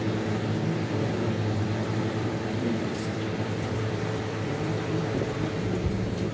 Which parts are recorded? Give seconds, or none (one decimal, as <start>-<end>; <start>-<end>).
0.0-1.9; 5.0-5.6